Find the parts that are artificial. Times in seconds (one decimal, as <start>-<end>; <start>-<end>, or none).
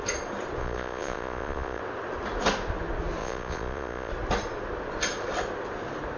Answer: 0.6-1.8; 3.2-4.1